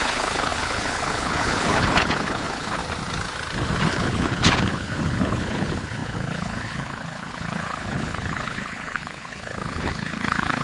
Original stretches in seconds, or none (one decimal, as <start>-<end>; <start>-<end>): 2.8-3.9